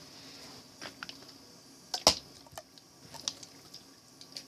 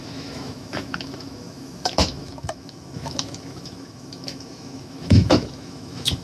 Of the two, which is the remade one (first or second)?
second